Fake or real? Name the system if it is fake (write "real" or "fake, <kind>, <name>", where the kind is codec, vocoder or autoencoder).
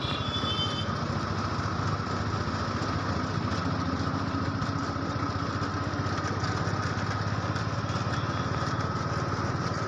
real